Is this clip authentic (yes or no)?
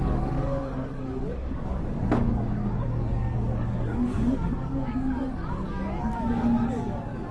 no